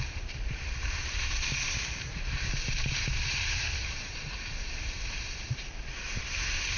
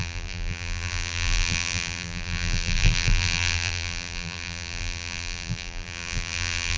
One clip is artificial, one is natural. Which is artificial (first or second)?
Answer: second